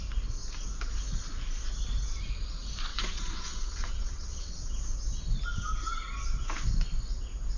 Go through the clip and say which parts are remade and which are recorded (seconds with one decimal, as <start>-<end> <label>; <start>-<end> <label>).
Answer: 0.0-2.9 recorded; 2.9-4.5 remade; 4.5-7.6 recorded